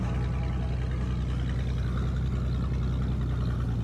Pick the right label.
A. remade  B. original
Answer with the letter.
B